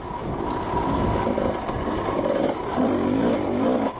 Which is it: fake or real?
fake